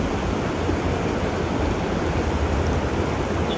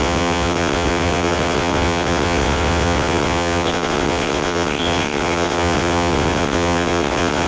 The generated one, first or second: second